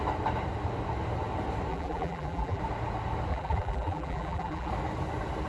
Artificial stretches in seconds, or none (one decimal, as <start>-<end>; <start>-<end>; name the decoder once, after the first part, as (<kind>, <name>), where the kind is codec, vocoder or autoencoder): 1.7-2.6 (vocoder, BigVGAN v2); 3.3-4.7